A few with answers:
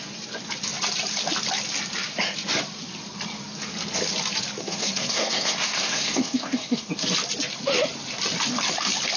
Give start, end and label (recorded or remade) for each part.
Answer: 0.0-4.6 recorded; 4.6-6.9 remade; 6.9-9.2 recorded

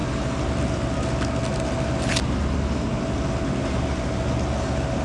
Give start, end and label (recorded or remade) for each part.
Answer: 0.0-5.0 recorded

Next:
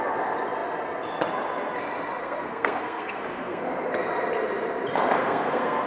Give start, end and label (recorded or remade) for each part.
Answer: 0.0-2.2 recorded; 2.2-3.6 remade; 3.6-5.2 recorded; 5.2-5.9 remade